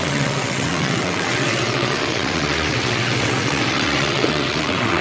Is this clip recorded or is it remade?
remade